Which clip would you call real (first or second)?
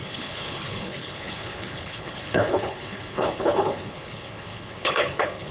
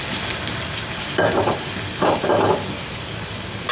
second